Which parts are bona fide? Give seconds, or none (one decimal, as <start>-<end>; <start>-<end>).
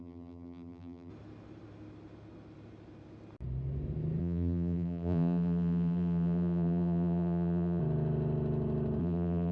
1.1-4.2; 7.8-9.0